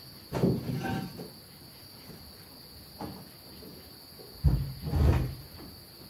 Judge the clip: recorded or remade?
recorded